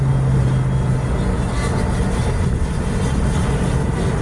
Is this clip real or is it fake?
real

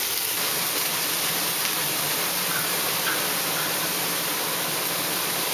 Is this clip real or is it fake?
fake